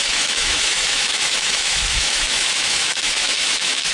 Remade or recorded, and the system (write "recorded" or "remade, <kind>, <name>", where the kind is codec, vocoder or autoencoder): remade, autoencoder, DAC-VAE